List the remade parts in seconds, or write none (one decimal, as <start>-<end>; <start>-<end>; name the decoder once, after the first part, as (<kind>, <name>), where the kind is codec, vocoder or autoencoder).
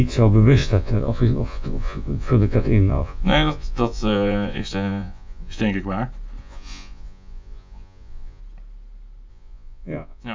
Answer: 0.0-5.6 (vocoder, Vocos); 6.4-8.4; 9.3-10.3